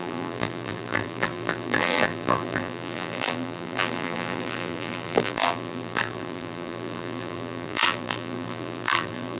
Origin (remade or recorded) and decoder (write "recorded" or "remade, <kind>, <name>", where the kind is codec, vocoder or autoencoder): remade, vocoder, BigVGAN v2